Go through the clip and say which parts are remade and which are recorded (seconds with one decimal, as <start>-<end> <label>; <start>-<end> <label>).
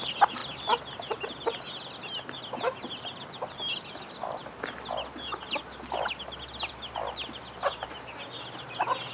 0.0-9.1 recorded